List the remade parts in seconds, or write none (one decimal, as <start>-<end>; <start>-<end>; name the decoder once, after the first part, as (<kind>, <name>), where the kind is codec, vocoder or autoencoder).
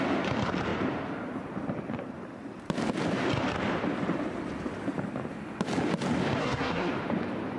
6.4-6.9 (codec, SNAC)